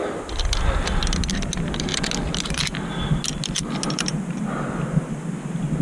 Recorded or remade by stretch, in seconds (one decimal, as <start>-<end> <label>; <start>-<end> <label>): 0.0-5.8 recorded

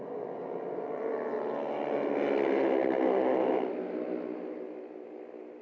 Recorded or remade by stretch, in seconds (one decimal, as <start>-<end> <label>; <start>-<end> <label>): 0.0-5.6 recorded

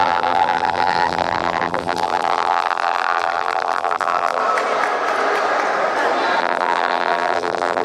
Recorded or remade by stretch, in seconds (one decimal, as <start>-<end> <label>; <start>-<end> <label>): 0.0-4.4 remade; 4.4-6.4 recorded; 6.4-7.8 remade

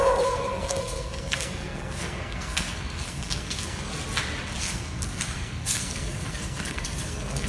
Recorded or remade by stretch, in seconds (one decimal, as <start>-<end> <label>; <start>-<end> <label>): 0.0-3.9 remade; 3.9-4.6 recorded; 4.6-7.5 remade

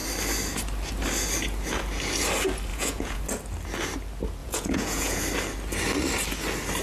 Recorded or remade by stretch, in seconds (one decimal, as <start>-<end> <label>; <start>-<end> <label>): 0.0-2.7 recorded; 2.7-3.2 remade; 3.2-4.4 recorded; 4.4-5.2 remade; 5.2-6.8 recorded

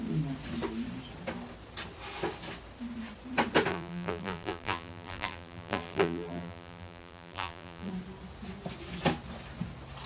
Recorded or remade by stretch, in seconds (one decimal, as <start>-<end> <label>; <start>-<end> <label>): 0.0-3.7 recorded; 3.7-7.9 remade; 7.9-10.1 recorded